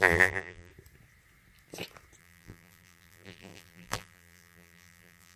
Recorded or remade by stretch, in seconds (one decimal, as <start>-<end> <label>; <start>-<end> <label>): 0.0-0.7 remade; 0.7-2.2 recorded; 2.2-5.4 remade